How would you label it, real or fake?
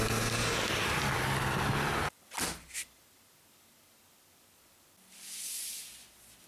real